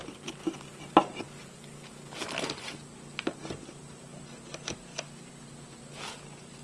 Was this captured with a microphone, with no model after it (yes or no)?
yes